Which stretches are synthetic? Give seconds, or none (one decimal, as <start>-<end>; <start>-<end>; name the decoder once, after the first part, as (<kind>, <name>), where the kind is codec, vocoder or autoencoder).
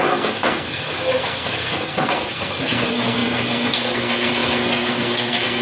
0.0-5.6 (codec, SNAC)